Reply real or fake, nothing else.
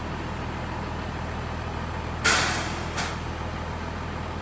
real